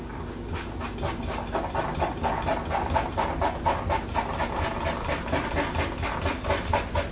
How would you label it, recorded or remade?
recorded